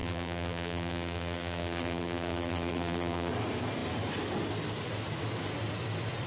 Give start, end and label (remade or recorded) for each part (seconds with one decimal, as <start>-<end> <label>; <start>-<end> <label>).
0.0-3.3 remade; 3.3-6.3 recorded